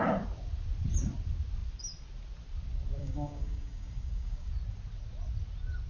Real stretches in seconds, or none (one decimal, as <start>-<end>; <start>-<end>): 0.0-3.0; 4.5-5.9